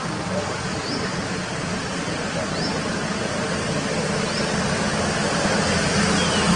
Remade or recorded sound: recorded